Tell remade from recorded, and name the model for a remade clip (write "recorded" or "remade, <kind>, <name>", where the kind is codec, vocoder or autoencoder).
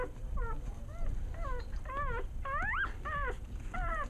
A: recorded